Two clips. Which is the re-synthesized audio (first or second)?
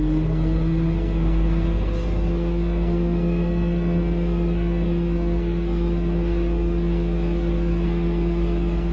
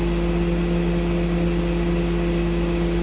first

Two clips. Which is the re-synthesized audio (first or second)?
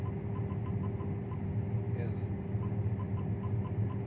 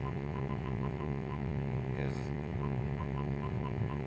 second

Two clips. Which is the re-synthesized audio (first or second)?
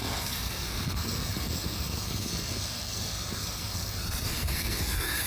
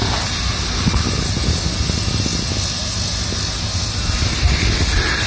first